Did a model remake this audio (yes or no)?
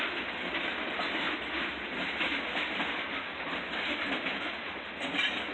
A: no